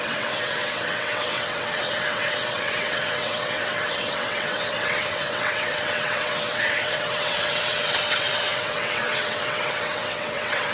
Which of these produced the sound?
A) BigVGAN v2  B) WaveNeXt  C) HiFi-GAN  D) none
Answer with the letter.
B